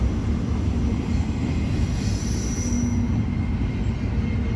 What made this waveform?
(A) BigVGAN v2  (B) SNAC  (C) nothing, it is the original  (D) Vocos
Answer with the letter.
C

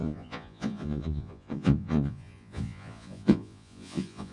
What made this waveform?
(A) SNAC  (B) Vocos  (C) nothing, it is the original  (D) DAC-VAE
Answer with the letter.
B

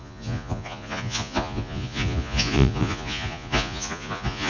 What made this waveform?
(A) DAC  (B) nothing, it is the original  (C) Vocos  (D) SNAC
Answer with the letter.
C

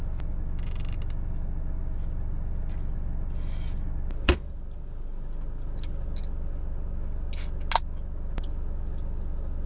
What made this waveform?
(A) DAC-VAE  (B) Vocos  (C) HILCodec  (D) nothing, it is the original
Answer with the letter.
D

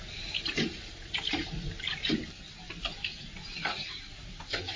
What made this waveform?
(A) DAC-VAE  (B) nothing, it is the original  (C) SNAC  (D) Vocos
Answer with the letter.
B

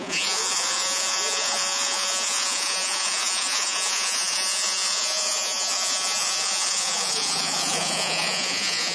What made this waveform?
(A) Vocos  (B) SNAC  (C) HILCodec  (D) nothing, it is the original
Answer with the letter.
A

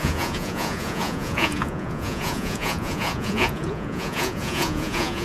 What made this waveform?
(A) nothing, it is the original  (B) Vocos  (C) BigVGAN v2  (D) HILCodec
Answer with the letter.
B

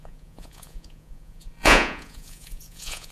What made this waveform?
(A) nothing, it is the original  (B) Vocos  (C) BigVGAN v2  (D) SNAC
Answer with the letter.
B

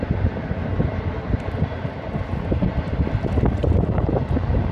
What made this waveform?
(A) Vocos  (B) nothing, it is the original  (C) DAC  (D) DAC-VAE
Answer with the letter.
B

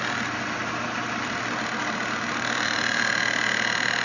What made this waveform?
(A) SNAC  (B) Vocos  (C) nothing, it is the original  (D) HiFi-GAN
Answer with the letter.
C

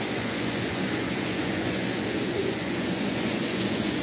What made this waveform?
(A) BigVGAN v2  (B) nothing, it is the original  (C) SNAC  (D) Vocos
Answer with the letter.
D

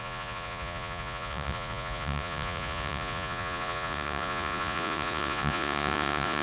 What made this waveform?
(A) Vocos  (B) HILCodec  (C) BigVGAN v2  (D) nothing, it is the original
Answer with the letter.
A